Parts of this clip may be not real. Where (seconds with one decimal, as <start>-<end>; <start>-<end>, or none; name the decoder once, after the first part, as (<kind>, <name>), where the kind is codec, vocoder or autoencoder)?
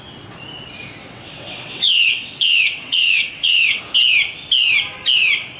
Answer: 1.0-3.8 (vocoder, WaveNeXt)